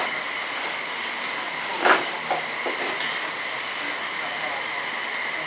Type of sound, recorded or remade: recorded